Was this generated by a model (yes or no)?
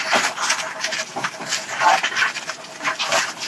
no